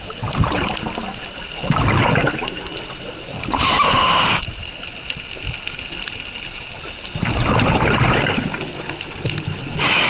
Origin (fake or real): real